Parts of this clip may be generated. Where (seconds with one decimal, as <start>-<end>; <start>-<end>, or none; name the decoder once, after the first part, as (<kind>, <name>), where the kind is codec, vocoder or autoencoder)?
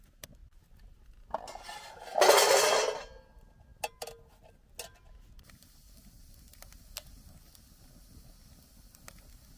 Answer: none